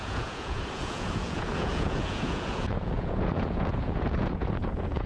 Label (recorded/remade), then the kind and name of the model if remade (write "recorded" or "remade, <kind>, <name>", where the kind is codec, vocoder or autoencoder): remade, vocoder, Vocos